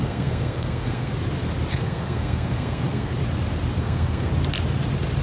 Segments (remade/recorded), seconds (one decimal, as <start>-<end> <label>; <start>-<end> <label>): 0.0-1.1 remade; 1.1-1.7 recorded; 1.7-3.1 remade; 3.1-3.8 recorded; 3.8-4.3 remade; 4.3-5.2 recorded